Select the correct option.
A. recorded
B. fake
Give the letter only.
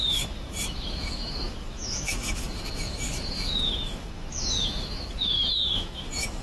B